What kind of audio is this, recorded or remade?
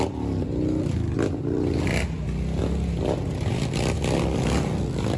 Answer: recorded